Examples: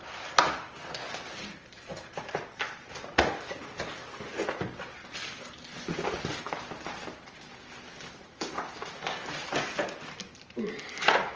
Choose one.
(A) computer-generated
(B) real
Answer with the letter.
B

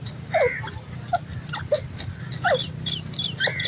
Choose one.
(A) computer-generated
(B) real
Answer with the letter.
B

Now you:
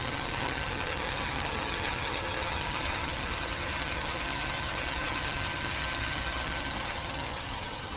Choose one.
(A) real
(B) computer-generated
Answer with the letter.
B